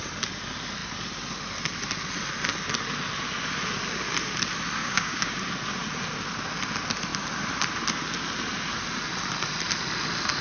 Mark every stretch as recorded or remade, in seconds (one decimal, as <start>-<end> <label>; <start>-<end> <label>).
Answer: 0.0-4.8 recorded; 4.8-5.4 remade; 5.4-10.4 recorded